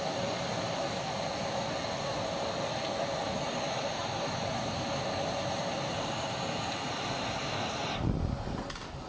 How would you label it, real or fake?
real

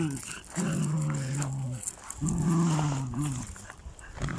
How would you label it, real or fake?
real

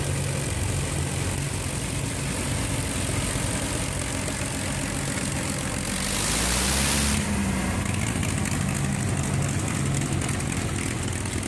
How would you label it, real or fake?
real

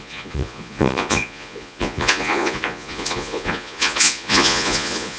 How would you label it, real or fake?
fake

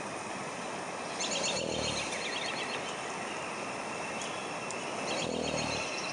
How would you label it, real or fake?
real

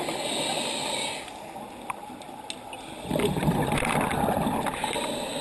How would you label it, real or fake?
real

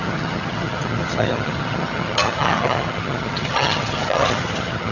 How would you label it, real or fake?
fake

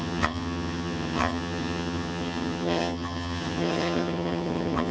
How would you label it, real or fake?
fake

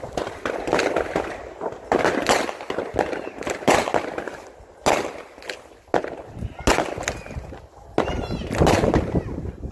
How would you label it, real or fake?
real